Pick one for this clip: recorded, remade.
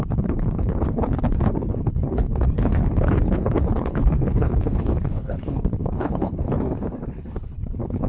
remade